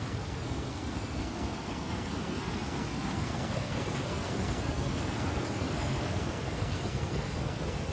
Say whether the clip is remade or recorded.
remade